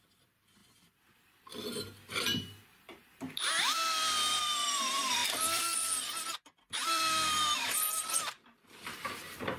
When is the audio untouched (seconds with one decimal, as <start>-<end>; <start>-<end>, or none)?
none